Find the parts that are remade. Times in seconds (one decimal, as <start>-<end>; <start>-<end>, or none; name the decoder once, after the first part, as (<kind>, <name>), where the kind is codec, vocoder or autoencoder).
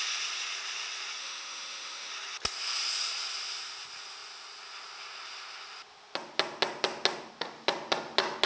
1.2-2.1 (autoencoder, DAC-VAE)